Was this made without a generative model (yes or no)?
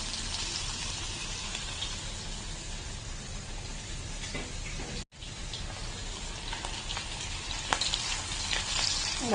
yes